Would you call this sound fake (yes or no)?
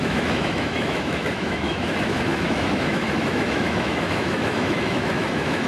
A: yes